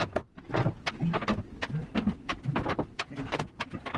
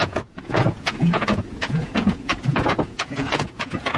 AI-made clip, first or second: second